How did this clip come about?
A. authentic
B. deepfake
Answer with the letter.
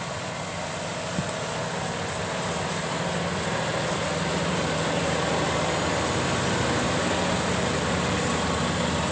A